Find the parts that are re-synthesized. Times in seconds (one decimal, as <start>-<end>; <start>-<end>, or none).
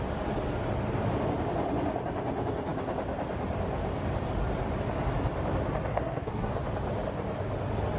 5.9-6.5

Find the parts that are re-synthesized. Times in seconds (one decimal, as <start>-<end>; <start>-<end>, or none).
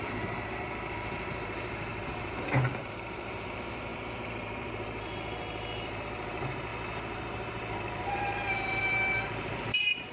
0.0-10.1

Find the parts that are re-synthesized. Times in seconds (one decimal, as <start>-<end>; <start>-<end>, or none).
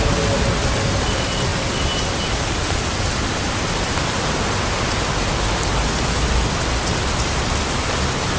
1.5-4.4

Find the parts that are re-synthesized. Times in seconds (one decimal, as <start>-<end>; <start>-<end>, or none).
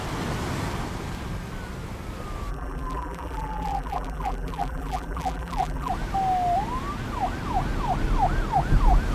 2.5-5.9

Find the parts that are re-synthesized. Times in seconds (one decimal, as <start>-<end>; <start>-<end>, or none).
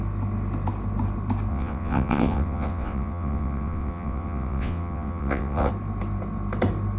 1.5-5.7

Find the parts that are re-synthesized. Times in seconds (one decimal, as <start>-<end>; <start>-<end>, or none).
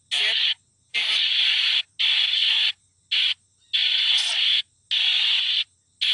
none